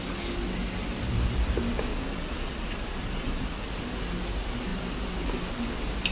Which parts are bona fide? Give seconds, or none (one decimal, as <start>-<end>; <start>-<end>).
0.0-1.9; 3.6-6.1